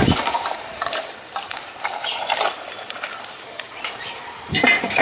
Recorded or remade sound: remade